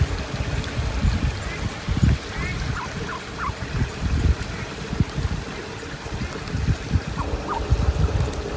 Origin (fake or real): real